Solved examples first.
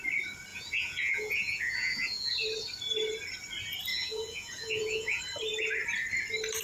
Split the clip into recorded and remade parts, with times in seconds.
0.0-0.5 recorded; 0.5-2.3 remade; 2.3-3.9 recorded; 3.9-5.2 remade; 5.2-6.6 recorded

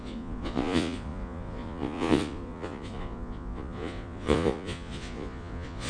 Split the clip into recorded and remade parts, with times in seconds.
0.0-5.9 remade

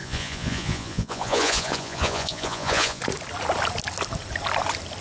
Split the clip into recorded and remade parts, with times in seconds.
0.0-3.0 remade; 3.0-5.0 recorded

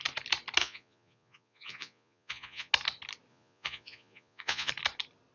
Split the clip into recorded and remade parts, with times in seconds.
0.0-0.6 recorded; 0.6-2.7 remade; 2.7-3.3 recorded; 3.3-4.7 remade; 4.7-5.3 recorded